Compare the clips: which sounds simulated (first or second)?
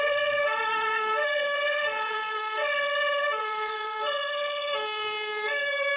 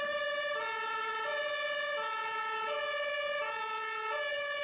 first